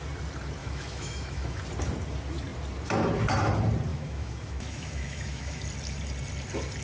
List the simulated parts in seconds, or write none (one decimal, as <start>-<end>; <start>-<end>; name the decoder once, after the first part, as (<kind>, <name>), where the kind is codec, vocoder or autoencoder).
0.6-1.6 (autoencoder, DAC-VAE); 3.9-5.6